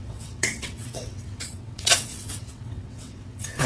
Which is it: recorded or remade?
remade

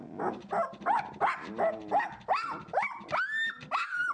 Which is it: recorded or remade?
recorded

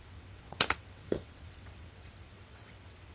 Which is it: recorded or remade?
remade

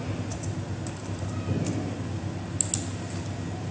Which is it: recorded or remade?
recorded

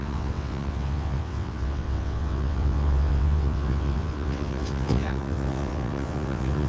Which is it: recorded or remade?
remade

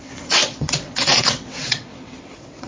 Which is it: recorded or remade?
remade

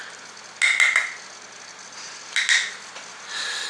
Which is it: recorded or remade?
recorded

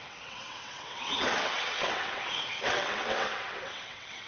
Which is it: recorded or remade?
remade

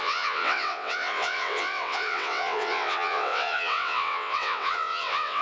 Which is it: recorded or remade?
remade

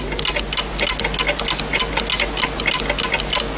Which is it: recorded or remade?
recorded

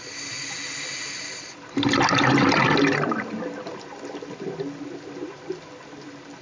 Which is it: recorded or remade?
recorded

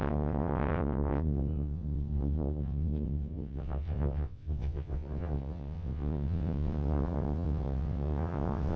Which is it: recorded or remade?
remade